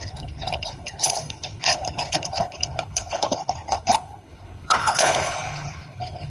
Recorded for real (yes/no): no